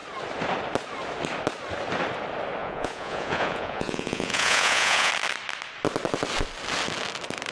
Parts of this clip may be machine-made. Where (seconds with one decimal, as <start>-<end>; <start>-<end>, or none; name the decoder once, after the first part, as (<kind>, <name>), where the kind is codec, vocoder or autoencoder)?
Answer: 2.6-5.1 (vocoder, Vocos)